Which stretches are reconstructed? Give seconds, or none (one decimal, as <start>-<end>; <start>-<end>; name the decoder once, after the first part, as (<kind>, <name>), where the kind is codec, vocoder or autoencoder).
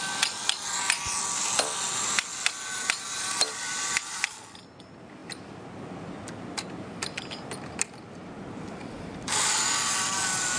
none